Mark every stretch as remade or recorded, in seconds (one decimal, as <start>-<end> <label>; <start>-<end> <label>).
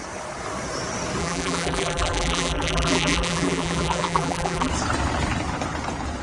0.0-1.2 recorded; 1.2-4.7 remade; 4.7-6.2 recorded